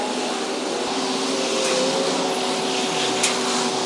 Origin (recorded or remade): recorded